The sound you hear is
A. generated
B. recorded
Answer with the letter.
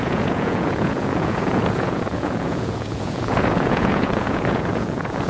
A